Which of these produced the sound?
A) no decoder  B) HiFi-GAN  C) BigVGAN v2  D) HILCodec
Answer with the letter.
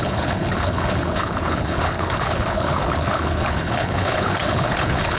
D